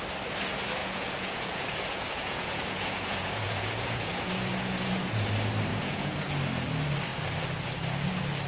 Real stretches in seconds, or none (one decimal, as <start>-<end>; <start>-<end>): 0.0-0.8; 5.3-5.7; 6.3-8.5